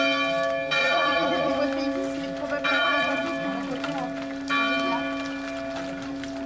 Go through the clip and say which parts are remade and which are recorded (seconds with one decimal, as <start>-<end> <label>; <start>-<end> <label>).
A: 0.0-0.8 recorded; 0.8-1.6 remade; 1.6-2.7 recorded; 2.7-3.2 remade; 3.2-6.5 recorded

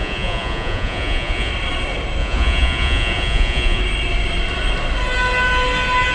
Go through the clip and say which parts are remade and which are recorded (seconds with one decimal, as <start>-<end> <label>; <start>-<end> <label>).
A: 0.0-1.5 remade; 1.5-2.2 recorded; 2.2-3.8 remade; 3.8-6.1 recorded

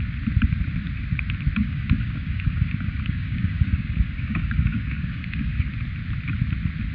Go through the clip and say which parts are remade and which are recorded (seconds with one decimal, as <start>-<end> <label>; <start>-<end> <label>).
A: 0.0-1.6 recorded; 1.6-5.7 remade; 5.7-6.9 recorded

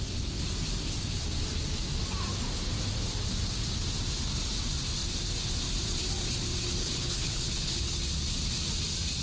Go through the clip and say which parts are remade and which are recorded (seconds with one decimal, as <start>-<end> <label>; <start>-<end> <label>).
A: 0.0-6.8 recorded; 6.8-7.8 remade; 7.8-9.2 recorded

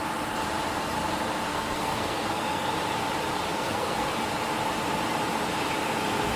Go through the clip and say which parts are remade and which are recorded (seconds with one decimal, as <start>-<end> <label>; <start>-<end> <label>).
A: 0.0-1.5 recorded; 1.5-2.7 remade; 2.7-3.5 recorded; 3.5-4.1 remade; 4.1-6.4 recorded

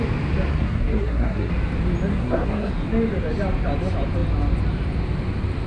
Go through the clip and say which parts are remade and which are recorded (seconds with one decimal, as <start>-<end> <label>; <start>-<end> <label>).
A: 0.0-0.5 recorded; 0.5-1.5 remade; 1.5-2.1 recorded; 2.1-2.7 remade; 2.7-5.7 recorded

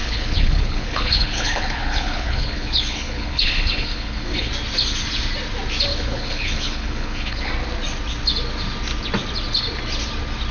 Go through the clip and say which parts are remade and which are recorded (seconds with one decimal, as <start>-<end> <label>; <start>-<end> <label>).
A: 0.0-4.5 remade; 4.5-5.9 recorded; 5.9-7.5 remade; 7.5-10.5 recorded

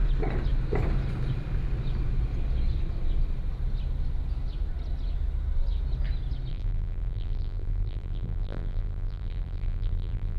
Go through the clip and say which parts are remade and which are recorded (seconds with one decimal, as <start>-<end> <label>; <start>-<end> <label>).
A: 0.0-6.5 recorded; 6.5-10.4 remade